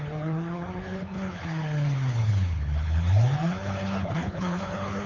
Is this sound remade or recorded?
remade